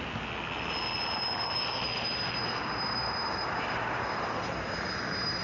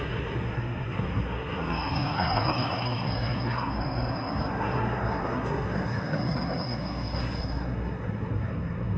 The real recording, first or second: first